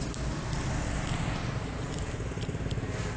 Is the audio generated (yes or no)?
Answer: no